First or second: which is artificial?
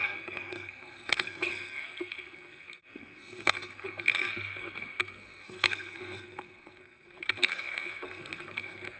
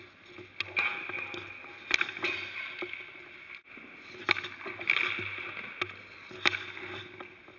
first